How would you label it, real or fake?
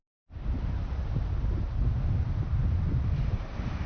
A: real